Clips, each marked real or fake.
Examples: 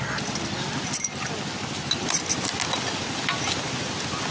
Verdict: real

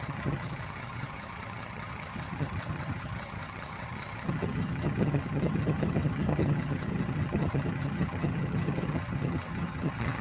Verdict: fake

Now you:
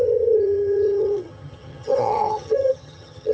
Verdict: fake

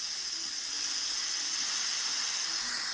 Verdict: real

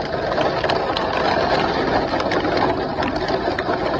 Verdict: real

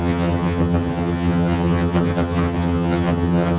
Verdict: fake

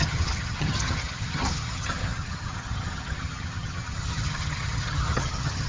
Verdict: fake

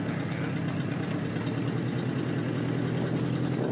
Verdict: real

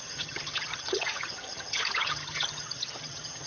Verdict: fake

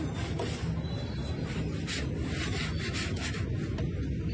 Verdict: real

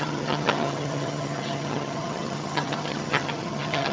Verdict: fake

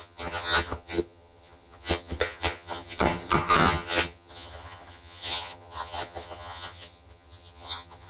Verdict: fake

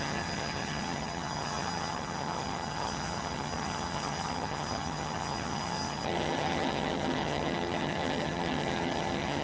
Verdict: fake